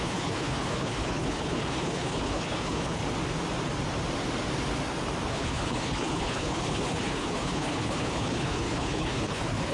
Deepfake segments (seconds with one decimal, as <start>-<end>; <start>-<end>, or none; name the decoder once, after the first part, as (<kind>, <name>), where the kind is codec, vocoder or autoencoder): 0.0-3.0 (codec, HILCodec); 5.3-9.7